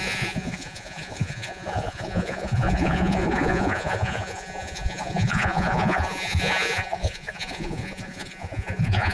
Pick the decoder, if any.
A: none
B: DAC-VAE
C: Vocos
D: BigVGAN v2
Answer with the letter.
C